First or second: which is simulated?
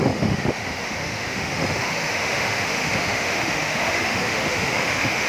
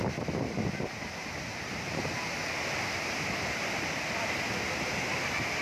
first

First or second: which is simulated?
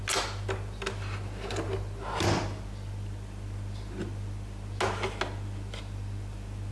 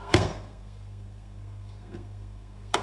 second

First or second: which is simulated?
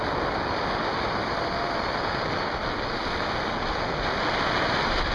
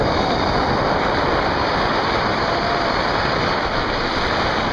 second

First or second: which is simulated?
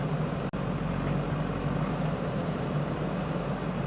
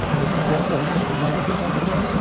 second